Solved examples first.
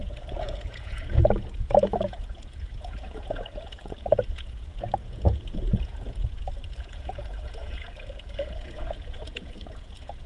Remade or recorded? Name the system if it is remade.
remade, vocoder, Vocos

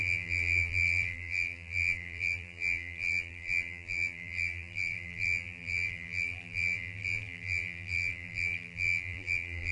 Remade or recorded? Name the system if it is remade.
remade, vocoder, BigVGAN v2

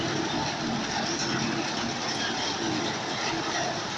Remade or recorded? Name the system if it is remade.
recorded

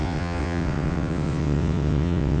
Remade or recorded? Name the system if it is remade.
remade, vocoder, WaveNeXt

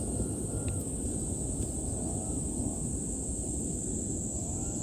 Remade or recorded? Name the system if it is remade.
recorded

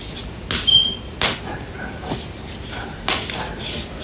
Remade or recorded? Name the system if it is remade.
recorded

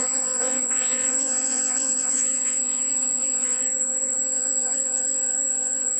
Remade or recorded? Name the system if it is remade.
remade, vocoder, Vocos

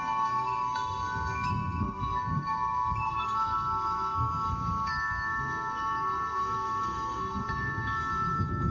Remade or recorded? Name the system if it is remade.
remade, codec, SNAC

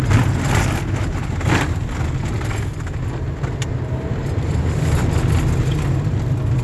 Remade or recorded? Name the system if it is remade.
recorded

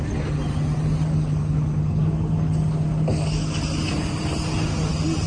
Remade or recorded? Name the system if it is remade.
recorded